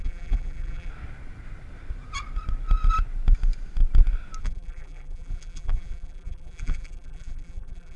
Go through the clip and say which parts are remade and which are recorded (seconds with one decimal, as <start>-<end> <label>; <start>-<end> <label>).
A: 0.0-0.9 remade; 0.9-4.4 recorded; 4.4-8.0 remade